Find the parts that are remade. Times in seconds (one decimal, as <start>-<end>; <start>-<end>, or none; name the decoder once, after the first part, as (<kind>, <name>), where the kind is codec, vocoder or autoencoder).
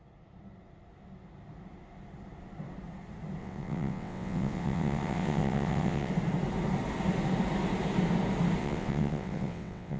3.4-6.1 (vocoder, WaveNeXt); 8.6-10.0